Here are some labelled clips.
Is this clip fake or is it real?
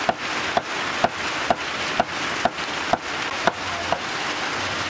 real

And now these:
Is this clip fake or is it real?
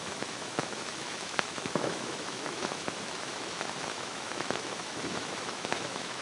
fake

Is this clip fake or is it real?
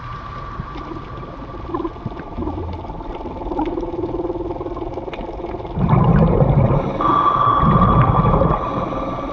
real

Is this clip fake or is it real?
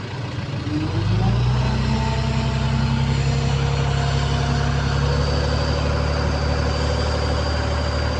real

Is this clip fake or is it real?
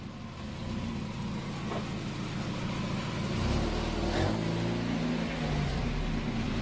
real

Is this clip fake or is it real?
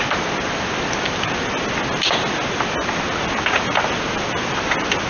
real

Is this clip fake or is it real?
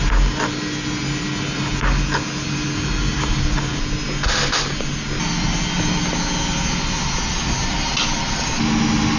real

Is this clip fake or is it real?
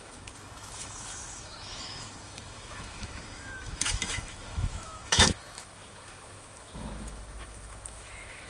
fake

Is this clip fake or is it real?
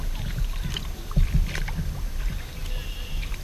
real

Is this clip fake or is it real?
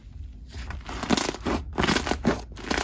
real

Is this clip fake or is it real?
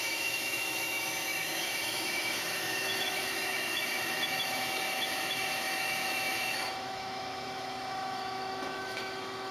fake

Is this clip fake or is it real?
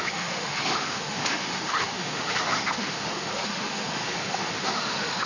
fake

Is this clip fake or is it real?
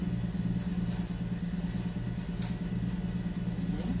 real